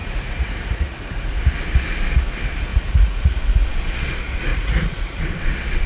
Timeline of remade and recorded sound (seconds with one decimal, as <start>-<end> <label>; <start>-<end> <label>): 0.0-1.5 remade; 1.5-2.7 recorded; 2.7-3.7 remade; 3.7-4.5 recorded; 4.5-5.4 remade; 5.4-5.9 recorded